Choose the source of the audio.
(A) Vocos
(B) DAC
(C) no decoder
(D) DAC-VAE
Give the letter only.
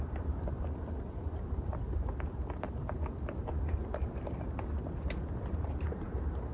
C